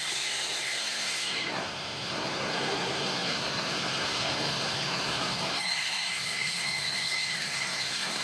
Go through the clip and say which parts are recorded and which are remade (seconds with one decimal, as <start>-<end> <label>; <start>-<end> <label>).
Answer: 0.0-8.2 remade